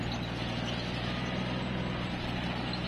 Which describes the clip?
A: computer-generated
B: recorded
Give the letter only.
B